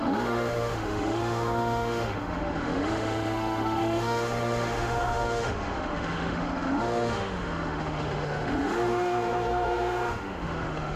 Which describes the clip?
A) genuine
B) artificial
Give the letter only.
B